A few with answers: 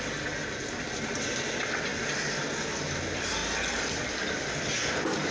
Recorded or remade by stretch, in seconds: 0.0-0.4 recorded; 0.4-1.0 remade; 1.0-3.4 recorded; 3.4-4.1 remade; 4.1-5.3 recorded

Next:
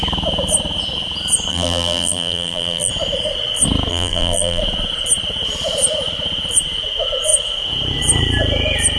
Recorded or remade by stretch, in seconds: 0.0-1.5 recorded; 1.5-2.9 remade; 2.9-3.9 recorded; 3.9-4.6 remade; 4.6-9.0 recorded

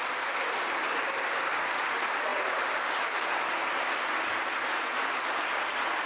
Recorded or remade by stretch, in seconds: 0.0-6.1 recorded

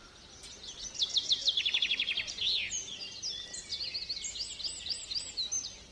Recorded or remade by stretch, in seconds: 0.0-5.9 recorded